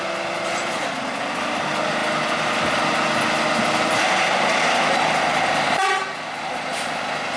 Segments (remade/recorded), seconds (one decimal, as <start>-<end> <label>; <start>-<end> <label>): 0.0-7.4 recorded